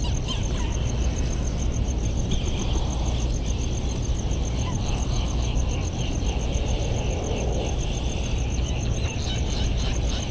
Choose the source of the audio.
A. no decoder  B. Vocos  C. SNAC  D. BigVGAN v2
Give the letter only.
A